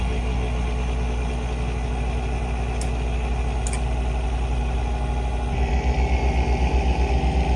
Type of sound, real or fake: real